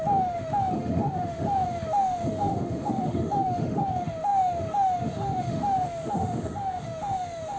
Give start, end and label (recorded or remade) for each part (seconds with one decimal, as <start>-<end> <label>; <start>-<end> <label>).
0.0-7.6 remade